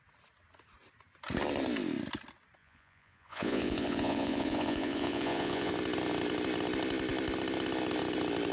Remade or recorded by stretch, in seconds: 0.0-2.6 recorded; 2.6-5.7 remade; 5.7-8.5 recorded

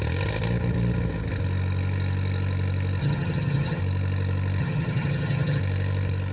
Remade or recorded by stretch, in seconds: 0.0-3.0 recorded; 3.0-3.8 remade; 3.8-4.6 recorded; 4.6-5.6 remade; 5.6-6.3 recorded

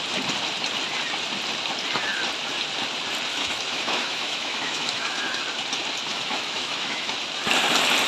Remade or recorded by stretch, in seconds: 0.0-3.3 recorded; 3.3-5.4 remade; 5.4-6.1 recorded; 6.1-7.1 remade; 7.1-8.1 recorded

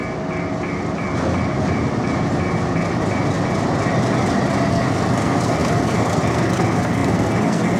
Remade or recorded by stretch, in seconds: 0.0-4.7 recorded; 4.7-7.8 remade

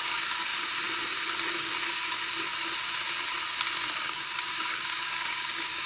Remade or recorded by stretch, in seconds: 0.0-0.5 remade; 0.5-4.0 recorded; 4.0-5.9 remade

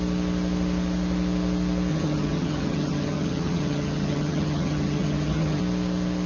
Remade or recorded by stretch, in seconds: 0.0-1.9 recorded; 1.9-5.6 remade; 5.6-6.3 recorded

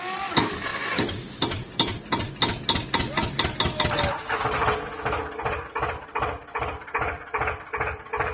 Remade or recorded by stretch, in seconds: 0.0-8.3 recorded

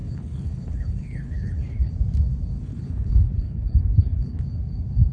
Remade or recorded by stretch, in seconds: 0.0-1.9 remade; 1.9-2.7 recorded; 2.7-4.4 remade; 4.4-5.1 recorded